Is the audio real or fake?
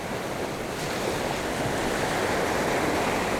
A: real